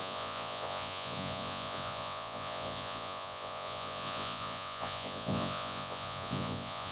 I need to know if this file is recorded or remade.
remade